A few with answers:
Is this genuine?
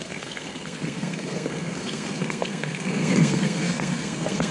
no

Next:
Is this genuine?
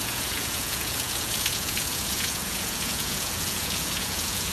no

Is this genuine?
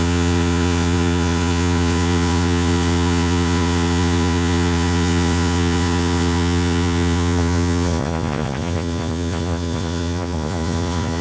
no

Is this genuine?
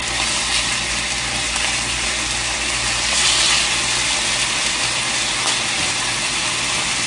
yes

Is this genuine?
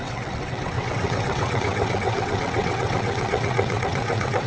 no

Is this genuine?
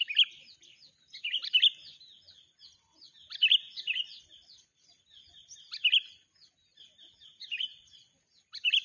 yes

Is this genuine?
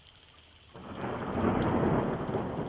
yes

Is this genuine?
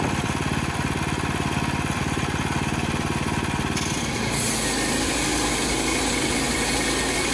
yes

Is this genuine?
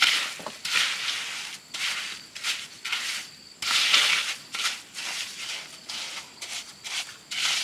yes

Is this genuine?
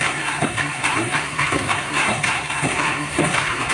no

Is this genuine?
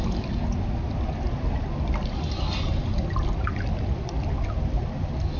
yes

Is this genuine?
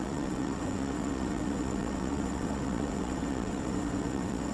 no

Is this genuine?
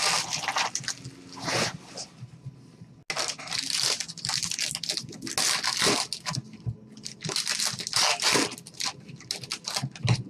yes